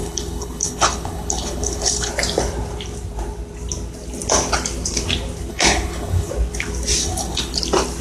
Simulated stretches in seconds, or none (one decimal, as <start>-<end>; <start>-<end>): 0.0-2.1; 5.5-6.3; 7.0-7.6